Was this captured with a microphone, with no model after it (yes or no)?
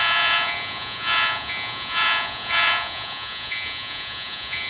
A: no